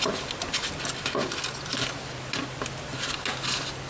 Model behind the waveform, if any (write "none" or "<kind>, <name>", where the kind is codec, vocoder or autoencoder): none